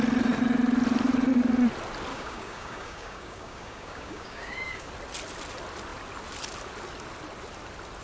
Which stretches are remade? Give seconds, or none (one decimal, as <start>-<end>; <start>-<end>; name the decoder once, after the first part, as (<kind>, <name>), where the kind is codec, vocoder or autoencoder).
2.1-4.9 (codec, DAC)